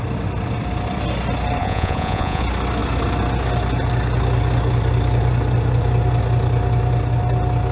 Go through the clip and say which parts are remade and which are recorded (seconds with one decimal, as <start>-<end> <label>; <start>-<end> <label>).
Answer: 0.0-1.6 recorded; 1.6-2.4 remade; 2.4-7.7 recorded